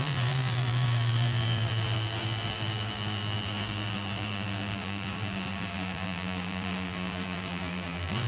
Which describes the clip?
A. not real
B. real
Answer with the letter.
A